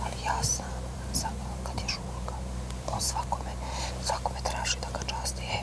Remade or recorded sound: remade